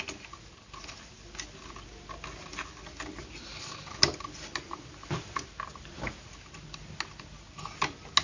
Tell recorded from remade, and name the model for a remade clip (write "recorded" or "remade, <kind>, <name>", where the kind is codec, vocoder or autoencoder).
recorded